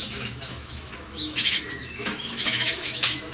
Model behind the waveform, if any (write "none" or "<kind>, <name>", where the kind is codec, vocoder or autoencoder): autoencoder, DAC-VAE